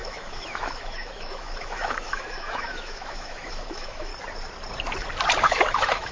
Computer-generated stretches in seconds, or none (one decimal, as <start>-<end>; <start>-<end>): 0.0-4.1; 5.4-6.1